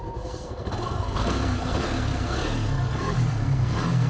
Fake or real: fake